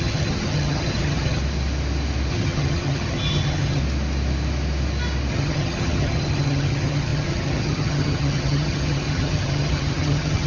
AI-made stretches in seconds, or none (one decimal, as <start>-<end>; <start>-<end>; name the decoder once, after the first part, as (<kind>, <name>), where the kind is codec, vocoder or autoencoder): 0.0-1.4 (vocoder, HiFi-GAN); 2.3-3.8; 5.3-10.5